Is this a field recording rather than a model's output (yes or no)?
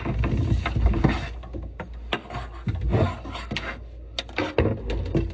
yes